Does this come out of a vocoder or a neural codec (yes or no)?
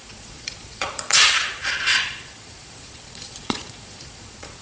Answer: yes